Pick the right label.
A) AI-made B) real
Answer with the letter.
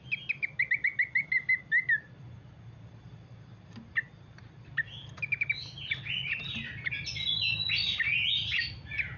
B